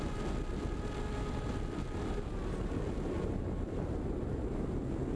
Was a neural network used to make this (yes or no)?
no